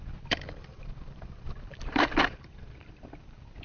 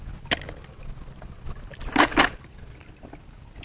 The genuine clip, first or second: second